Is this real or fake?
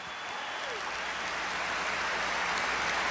real